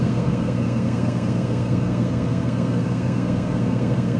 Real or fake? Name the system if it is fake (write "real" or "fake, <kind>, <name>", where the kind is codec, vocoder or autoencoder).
fake, codec, SNAC